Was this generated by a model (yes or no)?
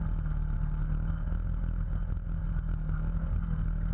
no